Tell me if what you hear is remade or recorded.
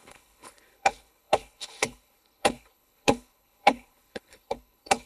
remade